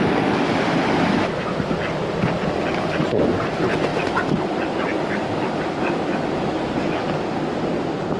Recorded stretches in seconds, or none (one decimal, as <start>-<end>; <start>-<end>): 0.0-8.2